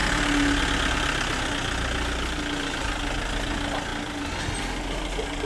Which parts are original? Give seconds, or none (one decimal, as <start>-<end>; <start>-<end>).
0.0-5.5